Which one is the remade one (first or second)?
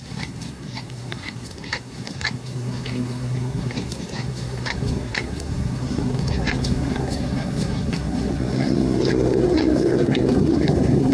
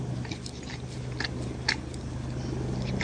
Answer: first